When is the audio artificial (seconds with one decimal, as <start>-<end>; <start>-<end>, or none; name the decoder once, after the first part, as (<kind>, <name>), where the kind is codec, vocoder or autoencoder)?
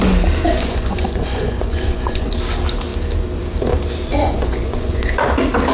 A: 0.4-2.3 (vocoder, Vocos); 4.1-5.2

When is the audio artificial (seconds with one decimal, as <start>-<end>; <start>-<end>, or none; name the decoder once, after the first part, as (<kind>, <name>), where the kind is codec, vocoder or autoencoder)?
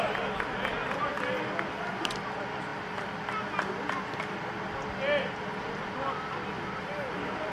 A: none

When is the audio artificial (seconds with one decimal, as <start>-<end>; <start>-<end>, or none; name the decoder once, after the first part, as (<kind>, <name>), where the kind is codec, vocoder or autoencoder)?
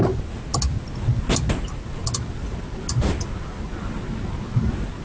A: none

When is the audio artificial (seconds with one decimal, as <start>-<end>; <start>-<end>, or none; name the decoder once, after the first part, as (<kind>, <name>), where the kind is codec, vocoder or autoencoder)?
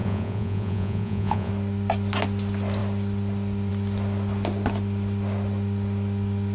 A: 0.0-1.5 (vocoder, Vocos)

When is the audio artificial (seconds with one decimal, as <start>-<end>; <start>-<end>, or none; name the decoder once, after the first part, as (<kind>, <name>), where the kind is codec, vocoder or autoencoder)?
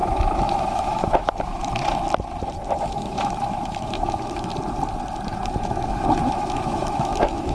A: 0.0-1.6 (autoencoder, DAC-VAE); 2.8-4.5; 5.6-7.5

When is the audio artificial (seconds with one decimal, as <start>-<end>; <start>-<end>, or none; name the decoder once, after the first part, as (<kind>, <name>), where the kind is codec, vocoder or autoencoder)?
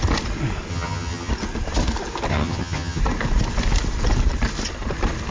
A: 0.7-1.3 (vocoder, HiFi-GAN); 2.3-3.0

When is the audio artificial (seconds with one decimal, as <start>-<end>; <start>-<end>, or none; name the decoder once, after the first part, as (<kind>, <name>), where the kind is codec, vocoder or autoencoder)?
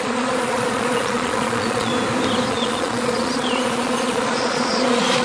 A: 0.0-1.9 (vocoder, Vocos); 2.5-5.2